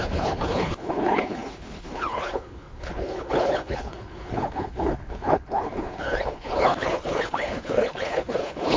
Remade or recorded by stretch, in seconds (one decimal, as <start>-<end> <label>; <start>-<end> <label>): 0.0-8.8 remade